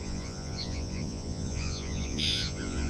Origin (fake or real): fake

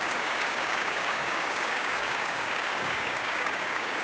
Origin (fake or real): fake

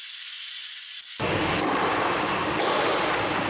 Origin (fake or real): real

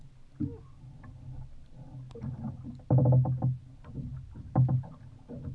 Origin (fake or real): real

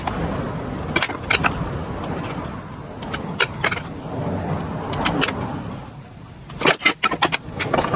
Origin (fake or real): real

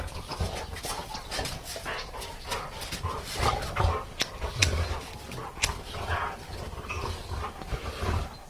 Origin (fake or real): real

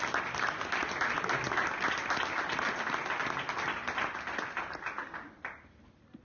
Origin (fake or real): real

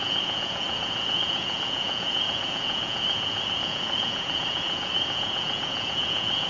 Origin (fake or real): fake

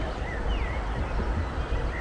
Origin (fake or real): real